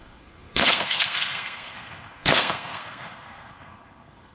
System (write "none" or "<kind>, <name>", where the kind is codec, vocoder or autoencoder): codec, SNAC